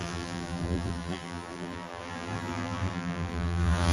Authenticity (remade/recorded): remade